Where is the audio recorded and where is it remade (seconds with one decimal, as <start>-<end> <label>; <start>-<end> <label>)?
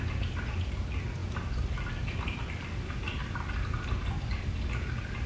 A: 0.0-5.3 recorded